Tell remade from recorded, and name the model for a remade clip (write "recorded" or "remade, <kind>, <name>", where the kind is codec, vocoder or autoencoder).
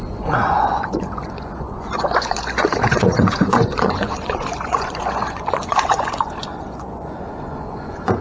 remade, vocoder, Vocos